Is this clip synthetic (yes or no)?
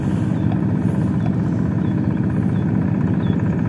no